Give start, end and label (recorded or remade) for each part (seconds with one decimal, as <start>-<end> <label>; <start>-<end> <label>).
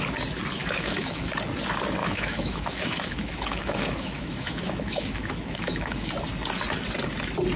0.0-0.6 recorded; 0.6-1.3 remade; 1.3-2.0 recorded; 2.0-6.1 remade; 6.1-7.6 recorded